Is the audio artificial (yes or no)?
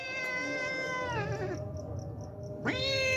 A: no